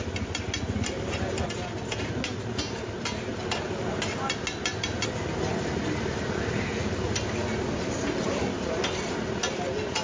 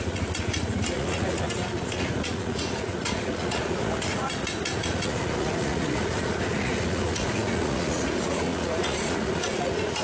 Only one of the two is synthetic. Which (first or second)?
second